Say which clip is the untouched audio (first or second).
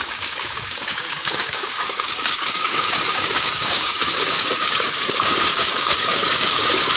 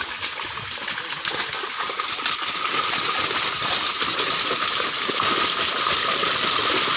second